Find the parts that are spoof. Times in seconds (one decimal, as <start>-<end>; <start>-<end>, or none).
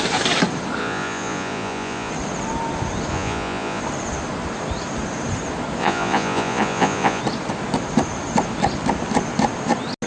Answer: 0.8-2.1; 3.1-3.8; 5.8-7.2